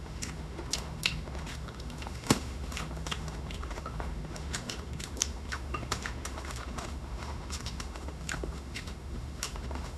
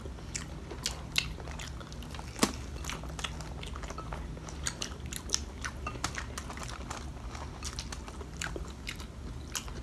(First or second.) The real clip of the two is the second